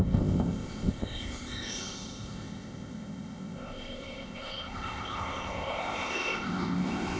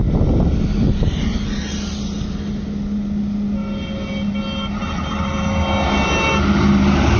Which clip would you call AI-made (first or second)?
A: first